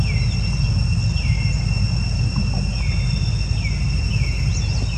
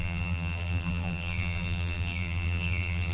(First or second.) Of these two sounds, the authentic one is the first